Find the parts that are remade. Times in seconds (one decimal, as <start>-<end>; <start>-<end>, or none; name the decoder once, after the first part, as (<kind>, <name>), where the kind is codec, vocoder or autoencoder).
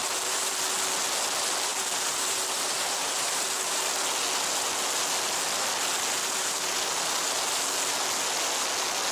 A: 0.0-0.6 (vocoder, BigVGAN v2); 1.7-3.8; 6.2-6.8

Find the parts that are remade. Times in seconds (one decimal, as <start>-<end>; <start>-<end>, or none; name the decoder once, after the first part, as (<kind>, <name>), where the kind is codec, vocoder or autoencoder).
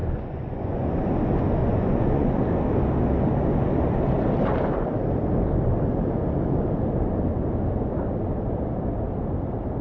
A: 0.0-0.9 (vocoder, Vocos); 1.6-2.4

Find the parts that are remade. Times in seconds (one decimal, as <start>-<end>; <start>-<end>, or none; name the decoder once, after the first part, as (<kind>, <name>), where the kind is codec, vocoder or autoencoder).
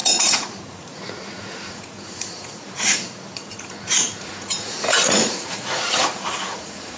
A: 0.0-7.0 (vocoder, Vocos)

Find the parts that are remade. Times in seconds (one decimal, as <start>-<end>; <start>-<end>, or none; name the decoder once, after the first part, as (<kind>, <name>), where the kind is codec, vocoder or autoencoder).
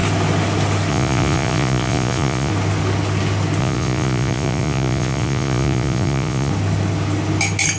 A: 0.9-2.5 (vocoder, Vocos); 3.6-6.5